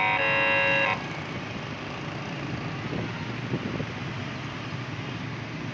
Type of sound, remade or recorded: recorded